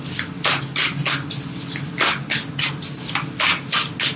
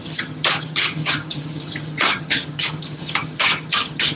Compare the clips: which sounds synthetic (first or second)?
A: second